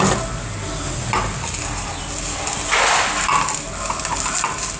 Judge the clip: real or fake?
real